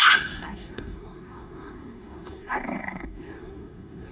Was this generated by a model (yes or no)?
yes